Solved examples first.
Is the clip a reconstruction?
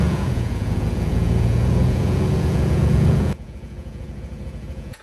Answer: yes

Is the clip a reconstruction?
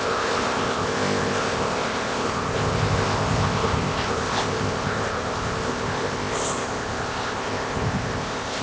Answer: yes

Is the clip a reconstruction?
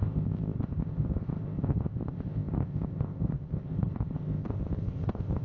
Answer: yes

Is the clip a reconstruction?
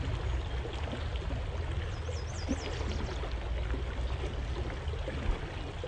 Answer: no